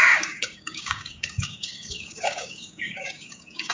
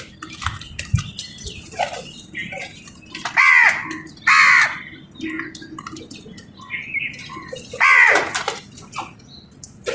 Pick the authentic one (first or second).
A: second